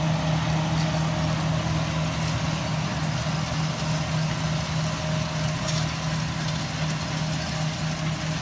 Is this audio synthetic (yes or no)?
no